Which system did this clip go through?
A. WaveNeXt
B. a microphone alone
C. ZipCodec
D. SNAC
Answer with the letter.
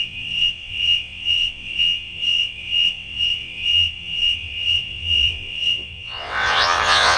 A